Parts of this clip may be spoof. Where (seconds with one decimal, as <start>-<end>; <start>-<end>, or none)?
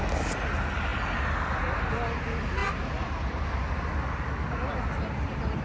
none